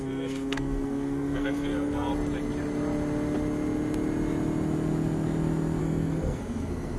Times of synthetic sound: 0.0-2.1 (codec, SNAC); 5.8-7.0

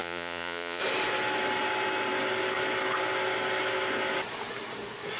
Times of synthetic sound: 0.0-0.8 (vocoder, Vocos)

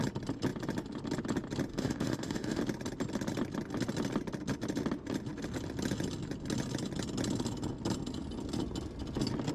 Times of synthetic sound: 1.7-2.6 (autoencoder, DAC-VAE)

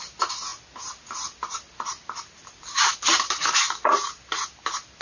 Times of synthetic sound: none

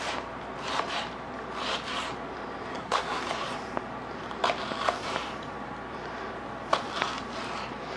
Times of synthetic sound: 2.7-3.2 (codec, SNAC)

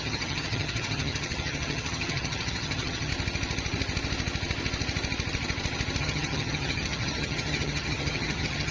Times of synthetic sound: 0.0-3.1 (vocoder, HiFi-GAN); 6.0-8.7